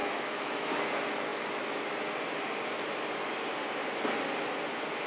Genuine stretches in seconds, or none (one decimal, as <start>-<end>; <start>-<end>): 0.8-5.1